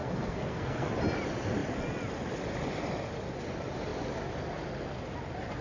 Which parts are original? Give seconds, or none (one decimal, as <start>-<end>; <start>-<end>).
0.9-5.6

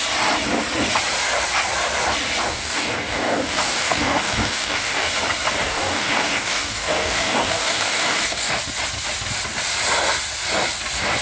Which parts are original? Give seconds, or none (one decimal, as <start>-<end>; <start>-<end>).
0.0-2.5; 5.1-5.6; 8.5-11.2